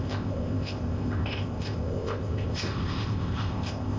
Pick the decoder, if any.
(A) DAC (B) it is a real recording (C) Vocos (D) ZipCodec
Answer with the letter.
D